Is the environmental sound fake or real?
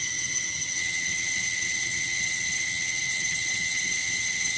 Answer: fake